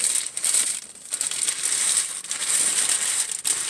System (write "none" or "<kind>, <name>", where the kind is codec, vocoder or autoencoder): none